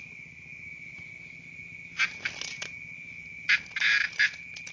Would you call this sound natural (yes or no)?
yes